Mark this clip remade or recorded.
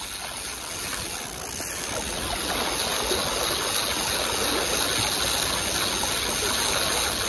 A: recorded